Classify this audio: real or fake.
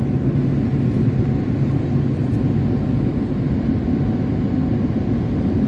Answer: real